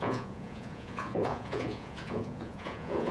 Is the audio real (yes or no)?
no